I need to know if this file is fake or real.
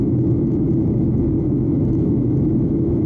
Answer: fake